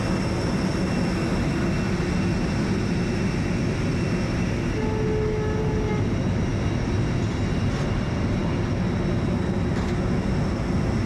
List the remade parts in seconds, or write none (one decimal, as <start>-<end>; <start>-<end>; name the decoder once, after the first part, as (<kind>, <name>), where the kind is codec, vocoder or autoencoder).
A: none